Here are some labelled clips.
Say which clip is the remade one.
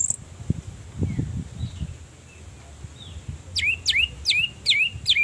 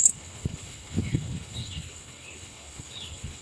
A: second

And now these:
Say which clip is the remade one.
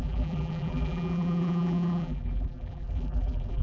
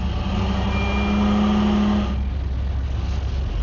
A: first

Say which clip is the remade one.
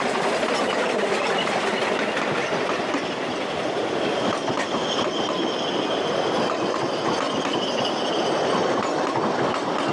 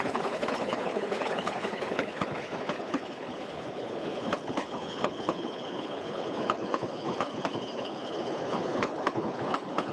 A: second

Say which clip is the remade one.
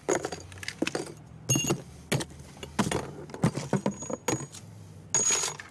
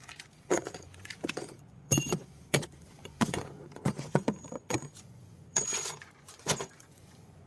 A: second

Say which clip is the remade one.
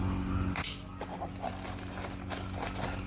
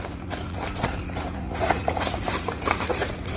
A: second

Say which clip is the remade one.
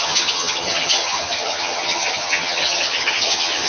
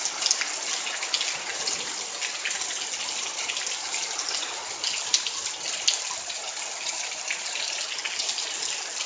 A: first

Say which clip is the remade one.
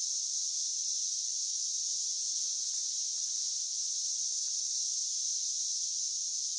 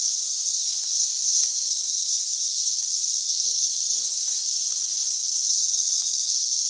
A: second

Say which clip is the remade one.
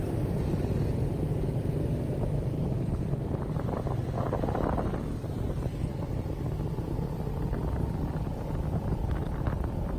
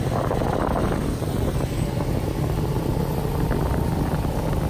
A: first